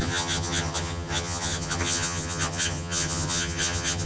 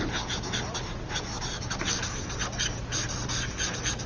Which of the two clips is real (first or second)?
second